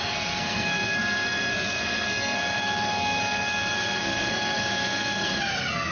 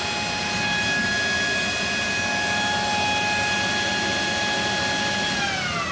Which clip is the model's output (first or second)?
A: first